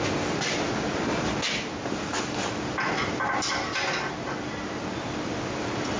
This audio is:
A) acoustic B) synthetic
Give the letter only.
A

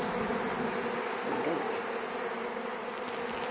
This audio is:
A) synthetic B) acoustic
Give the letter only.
B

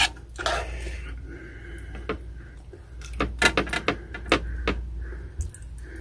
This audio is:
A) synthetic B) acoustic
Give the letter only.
B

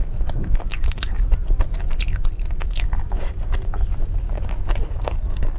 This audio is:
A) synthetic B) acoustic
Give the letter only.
B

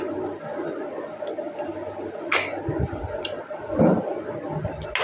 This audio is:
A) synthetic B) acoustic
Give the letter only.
B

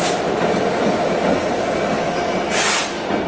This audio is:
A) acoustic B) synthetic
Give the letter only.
A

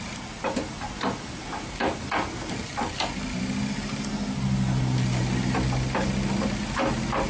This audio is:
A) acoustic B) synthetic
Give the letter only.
A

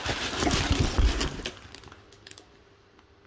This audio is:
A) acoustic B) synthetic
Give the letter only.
A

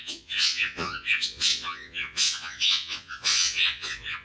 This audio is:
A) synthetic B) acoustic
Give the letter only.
A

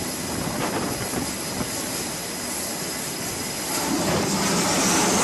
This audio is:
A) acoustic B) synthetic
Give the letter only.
A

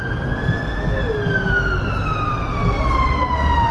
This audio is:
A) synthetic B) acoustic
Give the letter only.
B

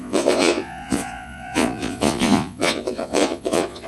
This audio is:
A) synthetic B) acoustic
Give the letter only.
A